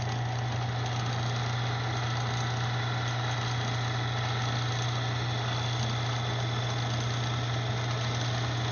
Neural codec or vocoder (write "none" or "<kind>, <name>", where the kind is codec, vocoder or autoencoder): none